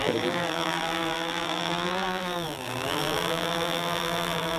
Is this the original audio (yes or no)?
no